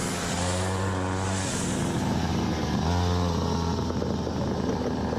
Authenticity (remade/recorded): recorded